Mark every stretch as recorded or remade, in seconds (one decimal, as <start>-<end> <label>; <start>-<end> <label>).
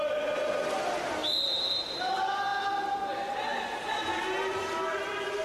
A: 0.0-1.2 remade; 1.2-2.0 recorded; 2.0-2.5 remade; 2.5-3.6 recorded; 3.6-5.4 remade